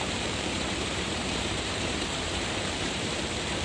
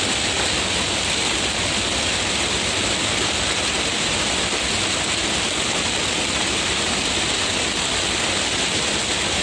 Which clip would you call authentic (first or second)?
second